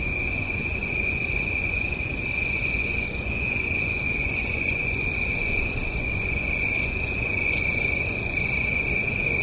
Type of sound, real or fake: fake